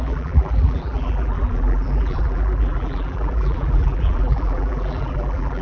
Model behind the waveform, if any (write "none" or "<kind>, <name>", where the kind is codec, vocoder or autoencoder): vocoder, BigVGAN v2